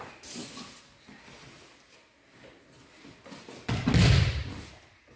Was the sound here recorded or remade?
recorded